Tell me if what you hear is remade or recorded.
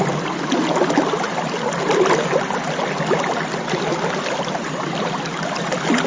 recorded